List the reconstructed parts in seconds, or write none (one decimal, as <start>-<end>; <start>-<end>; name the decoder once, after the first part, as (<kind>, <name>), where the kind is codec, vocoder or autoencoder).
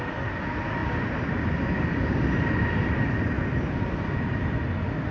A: none